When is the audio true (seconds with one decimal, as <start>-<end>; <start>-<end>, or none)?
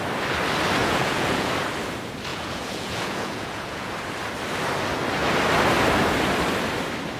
0.0-0.8; 1.5-2.3; 3.9-7.2